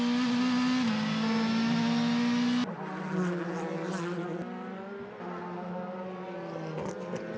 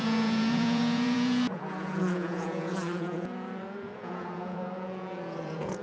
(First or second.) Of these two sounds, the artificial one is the second